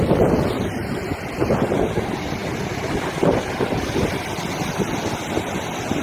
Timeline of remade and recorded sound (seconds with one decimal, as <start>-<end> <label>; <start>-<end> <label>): 0.0-6.0 recorded